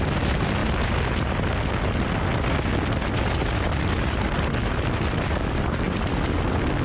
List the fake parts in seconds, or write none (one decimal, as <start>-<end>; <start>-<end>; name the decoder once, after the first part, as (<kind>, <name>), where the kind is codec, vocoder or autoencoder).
none